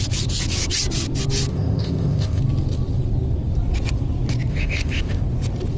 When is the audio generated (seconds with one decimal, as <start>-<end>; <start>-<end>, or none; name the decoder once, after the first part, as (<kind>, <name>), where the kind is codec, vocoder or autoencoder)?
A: 1.5-2.4 (codec, ZipCodec); 4.5-5.2